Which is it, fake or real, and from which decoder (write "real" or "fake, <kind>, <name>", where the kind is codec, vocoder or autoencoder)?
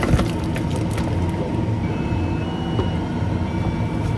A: real